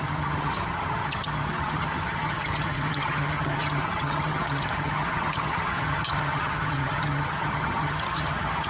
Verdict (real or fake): fake